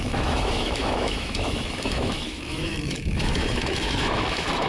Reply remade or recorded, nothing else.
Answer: remade